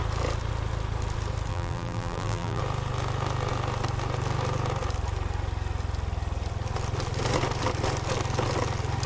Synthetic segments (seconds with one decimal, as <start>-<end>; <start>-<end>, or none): 1.5-2.6